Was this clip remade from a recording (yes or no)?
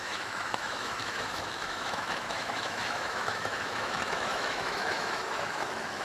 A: yes